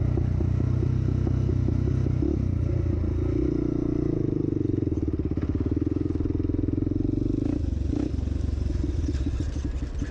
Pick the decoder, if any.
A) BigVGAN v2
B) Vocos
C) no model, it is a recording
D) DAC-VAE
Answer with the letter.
C